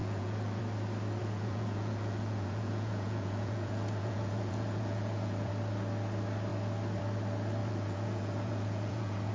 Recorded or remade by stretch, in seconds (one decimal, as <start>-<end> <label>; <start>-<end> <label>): 0.0-0.6 remade; 0.6-1.2 recorded; 1.2-5.5 remade; 5.5-7.6 recorded; 7.6-9.3 remade